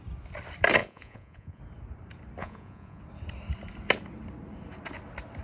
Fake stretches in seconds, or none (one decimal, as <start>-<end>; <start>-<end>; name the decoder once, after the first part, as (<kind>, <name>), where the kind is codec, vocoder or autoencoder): 0.8-1.6 (vocoder, Vocos); 2.4-3.0